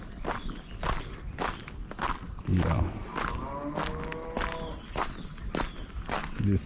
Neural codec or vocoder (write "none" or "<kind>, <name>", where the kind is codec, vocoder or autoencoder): none